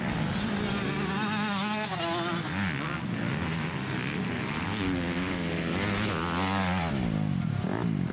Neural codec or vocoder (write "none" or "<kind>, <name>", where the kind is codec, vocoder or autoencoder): none